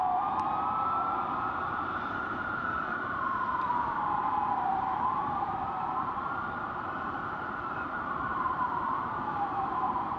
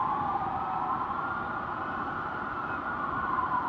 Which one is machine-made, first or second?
first